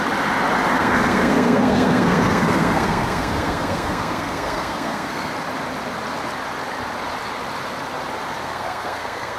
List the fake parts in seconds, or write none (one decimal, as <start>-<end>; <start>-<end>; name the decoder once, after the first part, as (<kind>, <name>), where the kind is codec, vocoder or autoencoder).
0.7-5.3 (codec, SNAC); 8.4-9.4